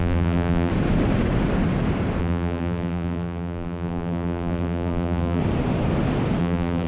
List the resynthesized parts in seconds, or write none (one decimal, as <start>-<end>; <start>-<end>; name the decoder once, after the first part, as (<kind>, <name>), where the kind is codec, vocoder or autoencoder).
0.0-0.7 (vocoder, BigVGAN v2); 2.2-5.4; 6.4-6.9